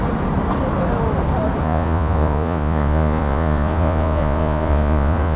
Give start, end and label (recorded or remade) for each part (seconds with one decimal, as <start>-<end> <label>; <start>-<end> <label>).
0.0-1.6 recorded; 1.6-5.4 remade